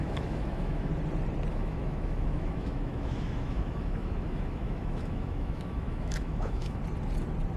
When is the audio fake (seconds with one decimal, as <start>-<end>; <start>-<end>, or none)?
0.0-0.9; 1.5-6.8